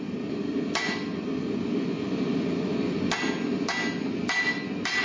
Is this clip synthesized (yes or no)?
no